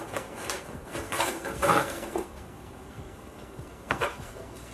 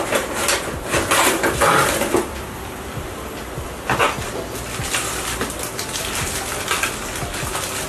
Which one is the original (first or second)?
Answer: second